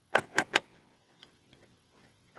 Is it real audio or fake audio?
fake